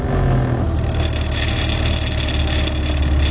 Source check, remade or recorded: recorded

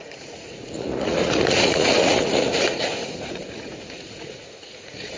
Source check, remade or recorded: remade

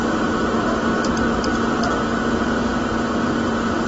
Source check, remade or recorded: recorded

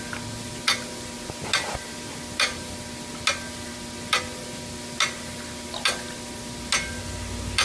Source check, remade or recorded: recorded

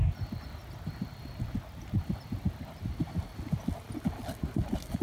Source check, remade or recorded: recorded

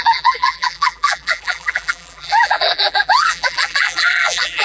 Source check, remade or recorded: remade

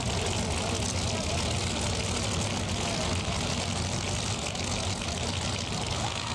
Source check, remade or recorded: recorded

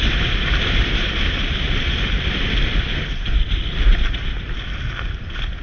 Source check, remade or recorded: remade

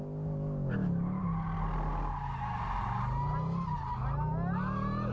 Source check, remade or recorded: recorded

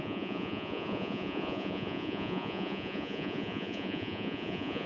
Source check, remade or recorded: remade